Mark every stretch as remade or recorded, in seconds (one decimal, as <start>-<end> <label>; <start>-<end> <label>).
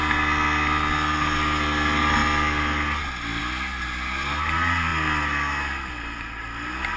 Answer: 0.0-7.0 recorded